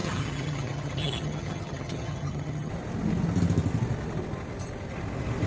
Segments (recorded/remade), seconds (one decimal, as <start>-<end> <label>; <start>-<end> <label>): 0.0-2.7 remade; 2.7-5.5 recorded